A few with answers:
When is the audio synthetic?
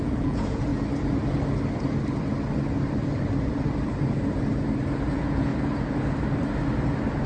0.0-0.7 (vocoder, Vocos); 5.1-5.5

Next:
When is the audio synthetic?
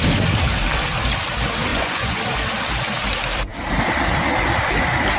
1.7-2.2 (vocoder, Vocos)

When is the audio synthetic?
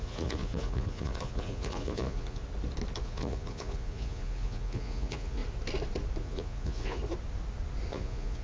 0.0-2.4 (vocoder, Vocos); 3.0-5.4; 6.2-7.0; 7.9-8.4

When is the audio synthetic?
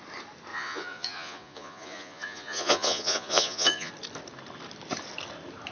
0.5-3.9 (vocoder, Vocos)